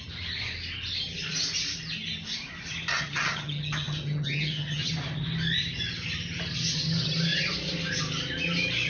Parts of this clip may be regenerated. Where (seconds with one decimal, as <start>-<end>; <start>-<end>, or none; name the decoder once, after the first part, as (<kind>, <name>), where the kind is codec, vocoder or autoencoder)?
2.9-4.9 (vocoder, HiFi-GAN)

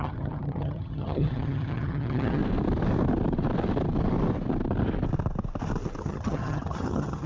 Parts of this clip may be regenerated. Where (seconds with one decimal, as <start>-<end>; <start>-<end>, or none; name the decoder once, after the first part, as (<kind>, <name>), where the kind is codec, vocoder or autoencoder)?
0.0-2.4 (vocoder, HiFi-GAN); 6.0-7.3